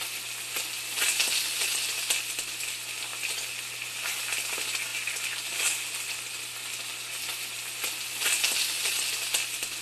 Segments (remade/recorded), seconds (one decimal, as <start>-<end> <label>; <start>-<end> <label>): 0.0-9.8 recorded